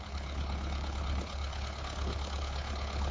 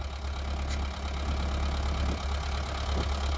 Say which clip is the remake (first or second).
first